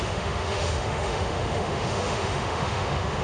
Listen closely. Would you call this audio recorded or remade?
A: remade